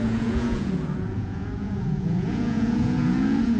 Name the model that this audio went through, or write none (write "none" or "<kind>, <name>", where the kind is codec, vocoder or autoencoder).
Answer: vocoder, Vocos